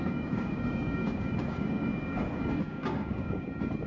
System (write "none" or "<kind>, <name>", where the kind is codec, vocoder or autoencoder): codec, DAC